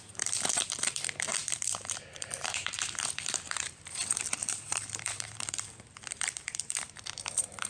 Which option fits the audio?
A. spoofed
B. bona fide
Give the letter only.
A